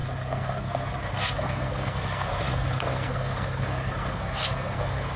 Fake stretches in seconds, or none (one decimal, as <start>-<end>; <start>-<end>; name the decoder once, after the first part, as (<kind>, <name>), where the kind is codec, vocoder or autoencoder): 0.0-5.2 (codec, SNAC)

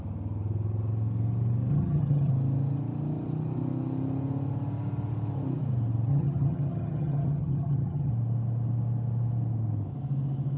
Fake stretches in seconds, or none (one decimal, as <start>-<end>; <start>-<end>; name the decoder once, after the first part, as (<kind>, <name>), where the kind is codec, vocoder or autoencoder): 1.7-2.3 (vocoder, HiFi-GAN); 6.1-8.1

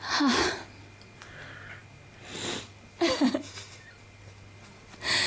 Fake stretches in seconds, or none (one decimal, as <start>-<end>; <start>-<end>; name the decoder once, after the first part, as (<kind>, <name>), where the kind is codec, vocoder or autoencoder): none

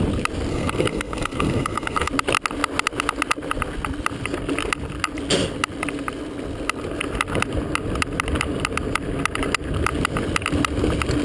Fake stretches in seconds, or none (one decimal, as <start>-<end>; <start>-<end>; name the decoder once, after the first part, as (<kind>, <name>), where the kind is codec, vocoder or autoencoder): 0.5-2.1 (codec, SNAC)

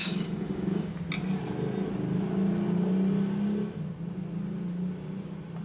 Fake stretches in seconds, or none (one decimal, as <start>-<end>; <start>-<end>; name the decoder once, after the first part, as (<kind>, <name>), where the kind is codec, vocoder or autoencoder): 0.0-0.9 (codec, DAC)

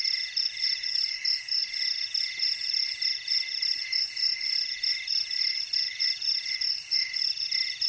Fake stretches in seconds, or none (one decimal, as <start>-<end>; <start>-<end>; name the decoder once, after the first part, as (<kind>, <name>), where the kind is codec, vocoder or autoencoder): none